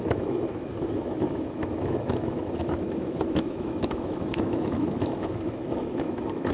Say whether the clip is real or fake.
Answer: fake